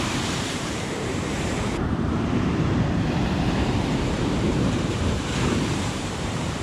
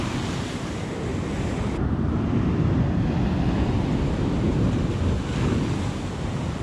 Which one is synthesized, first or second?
first